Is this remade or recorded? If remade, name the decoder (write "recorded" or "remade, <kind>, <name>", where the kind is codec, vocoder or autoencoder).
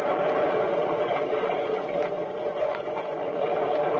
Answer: remade, vocoder, Vocos